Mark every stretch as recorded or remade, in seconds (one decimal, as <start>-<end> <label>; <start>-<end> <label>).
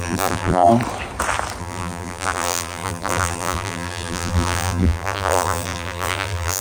0.0-0.7 remade; 0.7-1.6 recorded; 1.6-6.6 remade